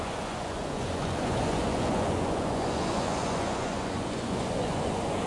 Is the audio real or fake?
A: fake